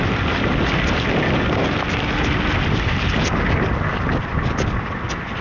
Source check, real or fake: real